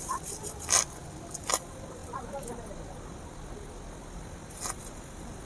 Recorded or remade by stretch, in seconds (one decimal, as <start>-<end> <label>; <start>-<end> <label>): 0.0-5.5 recorded